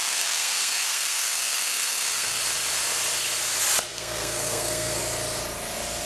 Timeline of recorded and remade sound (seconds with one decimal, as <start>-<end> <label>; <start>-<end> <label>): 0.0-2.4 remade; 2.4-3.9 recorded; 3.9-5.0 remade; 5.0-6.1 recorded